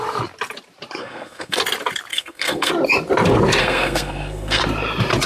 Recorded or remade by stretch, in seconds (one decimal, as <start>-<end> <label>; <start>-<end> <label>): 0.0-1.0 recorded; 1.0-1.6 remade; 1.6-2.1 recorded; 2.1-2.7 remade; 2.7-3.6 recorded; 3.6-4.6 remade; 4.6-5.3 recorded